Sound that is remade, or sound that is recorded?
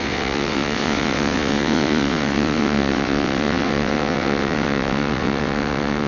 remade